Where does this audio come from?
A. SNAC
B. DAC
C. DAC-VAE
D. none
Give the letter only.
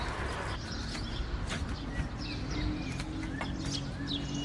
D